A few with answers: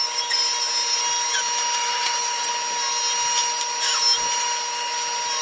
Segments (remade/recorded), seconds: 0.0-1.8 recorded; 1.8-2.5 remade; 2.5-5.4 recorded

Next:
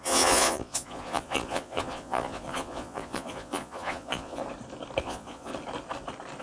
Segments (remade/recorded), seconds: 0.0-4.4 remade; 4.4-5.0 recorded; 5.0-5.5 remade; 5.5-6.4 recorded

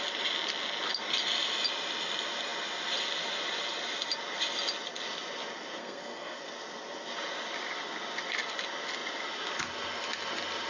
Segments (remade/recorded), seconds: 0.0-5.8 recorded; 5.8-6.5 remade; 6.5-10.7 recorded

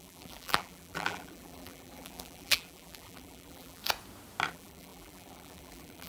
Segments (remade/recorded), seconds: 0.0-3.8 remade; 3.8-4.5 recorded; 4.5-6.1 remade

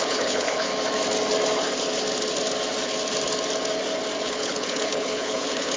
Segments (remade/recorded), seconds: 0.0-0.7 remade; 0.7-4.2 recorded; 4.2-5.8 remade

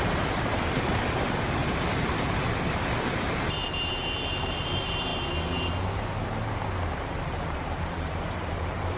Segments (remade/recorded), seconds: 0.0-5.1 remade; 5.1-6.9 recorded; 6.9-9.0 remade

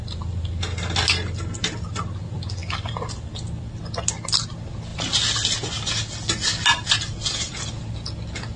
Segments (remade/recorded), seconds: 0.0-8.6 recorded